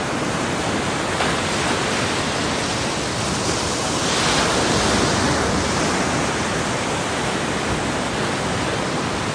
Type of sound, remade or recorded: recorded